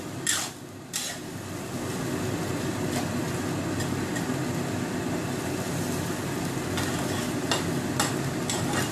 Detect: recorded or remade recorded